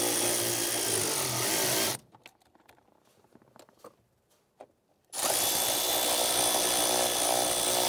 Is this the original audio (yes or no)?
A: yes